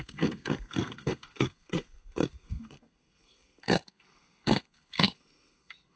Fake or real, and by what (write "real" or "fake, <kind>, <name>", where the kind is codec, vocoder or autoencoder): fake, codec, SNAC